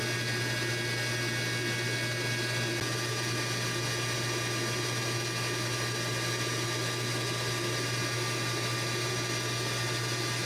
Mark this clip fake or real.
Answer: real